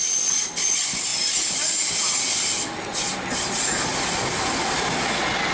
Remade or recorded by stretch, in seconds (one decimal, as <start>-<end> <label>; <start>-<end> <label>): 0.0-5.5 recorded